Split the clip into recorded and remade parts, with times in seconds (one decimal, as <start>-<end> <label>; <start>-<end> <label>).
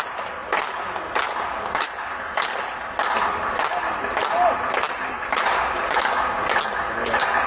0.0-7.5 recorded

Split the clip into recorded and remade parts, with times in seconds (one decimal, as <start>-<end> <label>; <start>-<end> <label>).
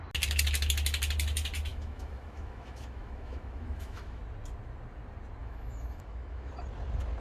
0.0-1.7 recorded; 1.7-4.2 remade; 4.2-5.4 recorded; 5.4-6.5 remade; 6.5-7.2 recorded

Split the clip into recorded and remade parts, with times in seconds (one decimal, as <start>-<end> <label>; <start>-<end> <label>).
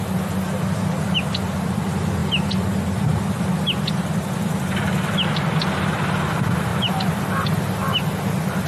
0.0-6.7 recorded; 6.7-7.2 remade; 7.2-8.7 recorded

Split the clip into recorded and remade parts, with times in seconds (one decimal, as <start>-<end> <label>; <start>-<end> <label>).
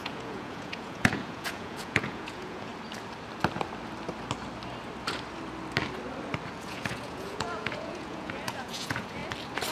0.0-2.7 remade; 2.7-6.5 recorded; 6.5-9.2 remade; 9.2-9.7 recorded